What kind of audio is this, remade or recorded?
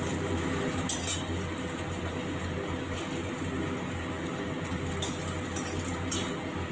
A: recorded